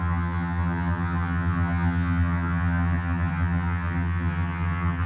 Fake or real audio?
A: fake